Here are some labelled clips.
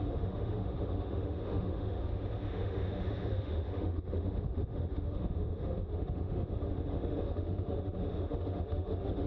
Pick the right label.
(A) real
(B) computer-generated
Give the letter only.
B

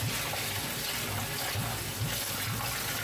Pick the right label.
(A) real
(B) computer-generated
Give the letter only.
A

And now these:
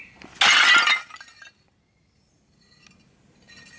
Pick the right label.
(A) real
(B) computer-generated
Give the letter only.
A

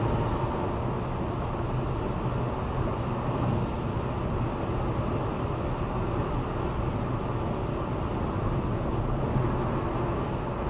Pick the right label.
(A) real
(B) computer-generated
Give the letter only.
A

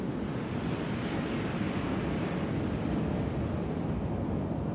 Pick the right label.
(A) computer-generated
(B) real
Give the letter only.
B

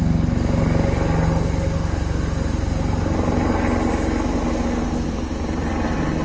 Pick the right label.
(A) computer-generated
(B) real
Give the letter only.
B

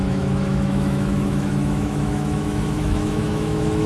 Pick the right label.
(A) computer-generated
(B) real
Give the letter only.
A